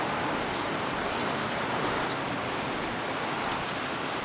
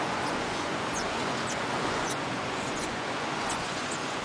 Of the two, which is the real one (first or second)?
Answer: first